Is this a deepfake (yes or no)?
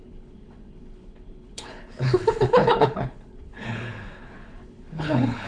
yes